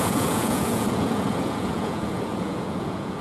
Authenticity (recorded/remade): remade